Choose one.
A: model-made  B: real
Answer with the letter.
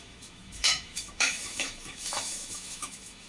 A